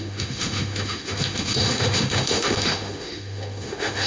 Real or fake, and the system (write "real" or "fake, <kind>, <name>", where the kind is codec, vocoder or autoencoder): fake, autoencoder, DAC-VAE